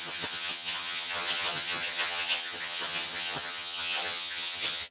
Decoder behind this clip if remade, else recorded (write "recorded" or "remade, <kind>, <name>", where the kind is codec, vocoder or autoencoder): remade, vocoder, HiFi-GAN